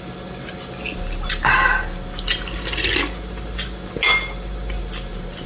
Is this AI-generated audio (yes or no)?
no